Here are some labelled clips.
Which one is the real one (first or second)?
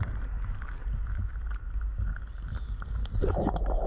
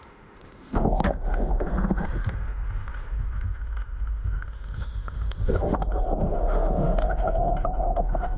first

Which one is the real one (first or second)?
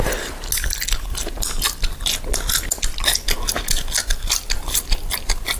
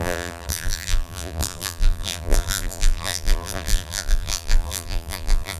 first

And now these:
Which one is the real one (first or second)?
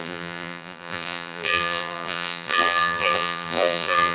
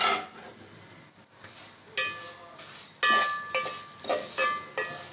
second